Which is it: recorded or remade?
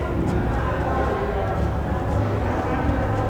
recorded